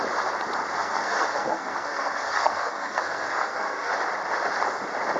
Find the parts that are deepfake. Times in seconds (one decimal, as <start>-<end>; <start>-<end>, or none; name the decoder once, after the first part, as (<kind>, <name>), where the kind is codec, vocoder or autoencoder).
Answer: 0.8-3.9 (codec, SNAC)